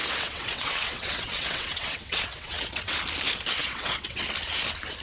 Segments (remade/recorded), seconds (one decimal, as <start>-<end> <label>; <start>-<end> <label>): 0.0-3.0 remade; 3.0-3.6 recorded; 3.6-4.2 remade; 4.2-5.0 recorded